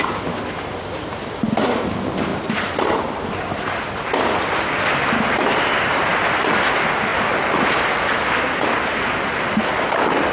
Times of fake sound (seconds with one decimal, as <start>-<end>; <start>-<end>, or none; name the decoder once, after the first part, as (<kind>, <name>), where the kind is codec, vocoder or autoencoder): none